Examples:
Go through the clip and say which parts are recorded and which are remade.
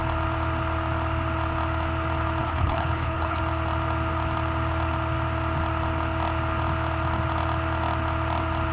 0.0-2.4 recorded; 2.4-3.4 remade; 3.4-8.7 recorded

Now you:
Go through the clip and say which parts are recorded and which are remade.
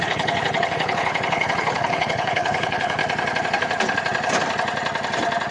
0.0-3.0 remade; 3.0-5.5 recorded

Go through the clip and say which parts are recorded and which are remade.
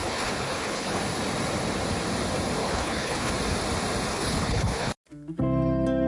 0.0-1.0 remade; 1.0-2.6 recorded; 2.6-3.3 remade; 3.3-4.1 recorded; 4.1-4.9 remade; 4.9-6.1 recorded